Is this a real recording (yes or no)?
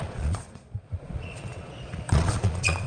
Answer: no